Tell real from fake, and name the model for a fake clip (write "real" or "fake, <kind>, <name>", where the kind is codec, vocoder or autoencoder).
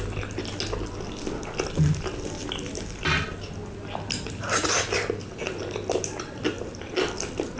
real